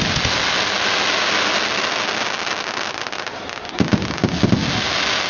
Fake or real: real